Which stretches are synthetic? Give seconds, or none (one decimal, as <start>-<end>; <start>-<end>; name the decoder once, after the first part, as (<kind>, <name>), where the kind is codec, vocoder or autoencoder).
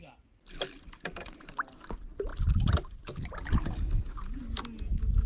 none